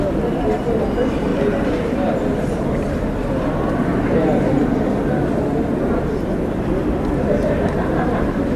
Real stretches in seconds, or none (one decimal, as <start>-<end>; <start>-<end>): 0.0-8.6